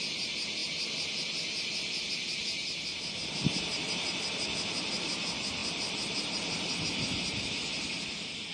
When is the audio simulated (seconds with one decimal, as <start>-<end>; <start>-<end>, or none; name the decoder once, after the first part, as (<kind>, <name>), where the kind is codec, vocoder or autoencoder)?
0.6-2.1 (vocoder, BigVGAN v2); 5.6-6.8